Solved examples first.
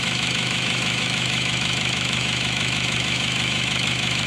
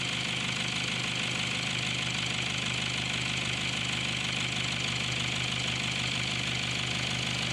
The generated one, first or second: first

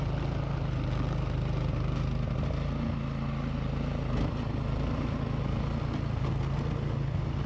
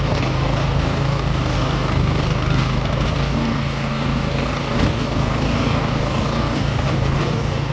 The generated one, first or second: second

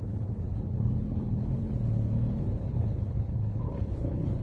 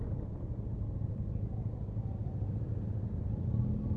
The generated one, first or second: first